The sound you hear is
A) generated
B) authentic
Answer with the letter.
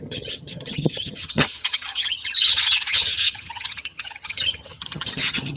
A